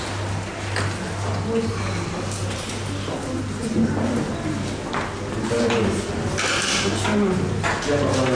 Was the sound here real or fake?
real